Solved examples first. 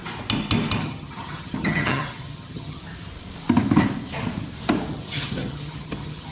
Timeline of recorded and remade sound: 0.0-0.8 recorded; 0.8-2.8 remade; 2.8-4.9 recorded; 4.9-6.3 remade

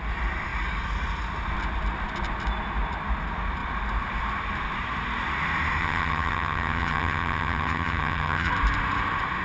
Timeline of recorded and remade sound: 0.0-5.8 recorded; 5.8-8.5 remade; 8.5-9.4 recorded

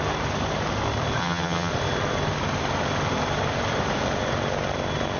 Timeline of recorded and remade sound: 0.0-1.2 recorded; 1.2-1.7 remade; 1.7-5.2 recorded

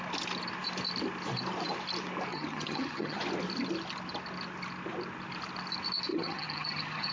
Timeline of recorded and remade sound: 0.0-2.3 recorded; 2.3-3.2 remade; 3.2-6.1 recorded; 6.1-7.1 remade